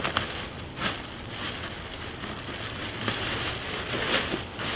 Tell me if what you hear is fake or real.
real